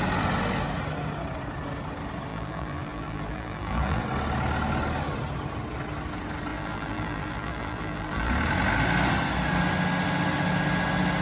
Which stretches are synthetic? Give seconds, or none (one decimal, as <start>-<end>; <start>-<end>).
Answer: 2.3-4.0; 6.5-8.3

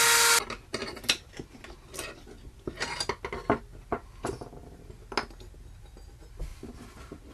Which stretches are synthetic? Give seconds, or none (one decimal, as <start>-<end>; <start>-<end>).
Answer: none

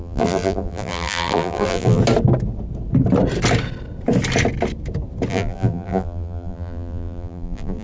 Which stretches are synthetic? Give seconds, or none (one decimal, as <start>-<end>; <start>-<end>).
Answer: 0.0-2.0; 5.3-7.8

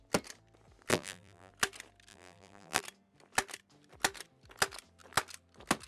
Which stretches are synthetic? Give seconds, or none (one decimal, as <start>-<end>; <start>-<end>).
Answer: 0.9-1.5; 2.1-2.8